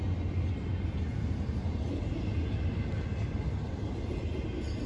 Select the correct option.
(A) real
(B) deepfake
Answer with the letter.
A